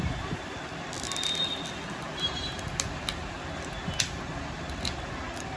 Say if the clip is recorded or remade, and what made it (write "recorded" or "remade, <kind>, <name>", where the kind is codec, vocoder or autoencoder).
recorded